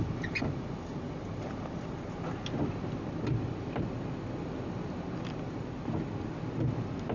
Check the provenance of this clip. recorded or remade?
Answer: recorded